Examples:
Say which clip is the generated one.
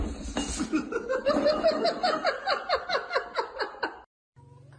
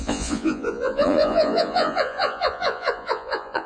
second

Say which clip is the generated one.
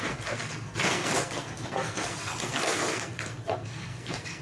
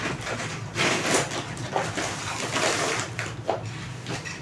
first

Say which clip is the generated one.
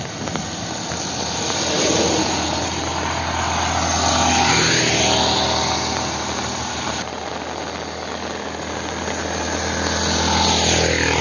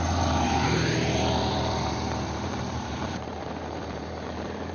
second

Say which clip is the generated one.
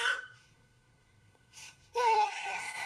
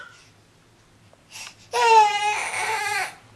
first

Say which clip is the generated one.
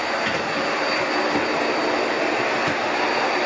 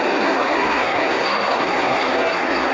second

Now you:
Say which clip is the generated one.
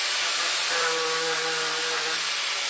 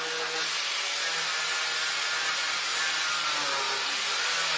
first